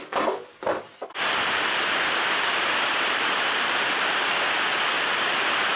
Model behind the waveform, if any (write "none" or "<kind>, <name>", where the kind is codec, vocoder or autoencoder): vocoder, BigVGAN v2